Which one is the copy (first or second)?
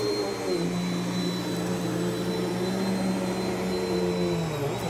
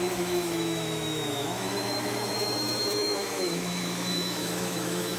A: second